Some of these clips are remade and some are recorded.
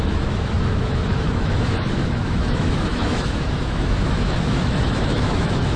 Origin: remade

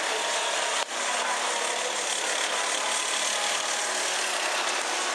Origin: recorded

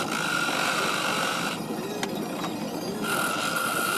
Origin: recorded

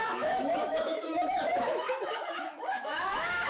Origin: remade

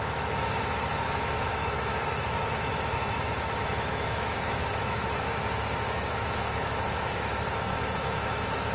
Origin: remade